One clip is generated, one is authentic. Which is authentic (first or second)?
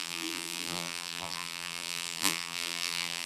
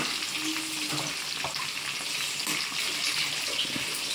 second